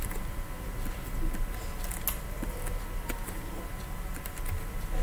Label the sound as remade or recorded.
recorded